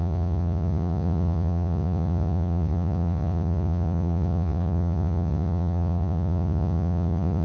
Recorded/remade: remade